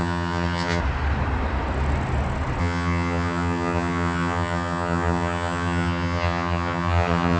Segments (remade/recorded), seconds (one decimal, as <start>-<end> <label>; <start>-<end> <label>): 0.0-0.8 remade; 0.8-2.6 recorded; 2.6-7.4 remade